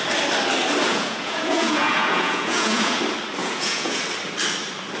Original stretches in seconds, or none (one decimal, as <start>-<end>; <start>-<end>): 0.0-0.9; 3.0-3.4; 4.0-5.0